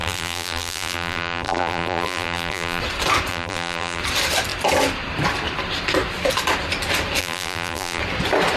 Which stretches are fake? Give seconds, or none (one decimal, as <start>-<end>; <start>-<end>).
0.0-2.8; 3.3-4.0; 7.2-8.0